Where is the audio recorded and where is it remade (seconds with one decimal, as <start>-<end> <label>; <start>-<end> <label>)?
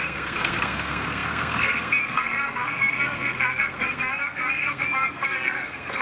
0.0-6.0 remade